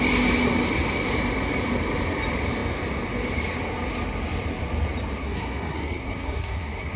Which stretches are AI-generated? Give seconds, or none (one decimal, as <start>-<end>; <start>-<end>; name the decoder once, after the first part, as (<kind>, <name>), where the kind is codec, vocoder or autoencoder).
5.2-7.0 (codec, SNAC)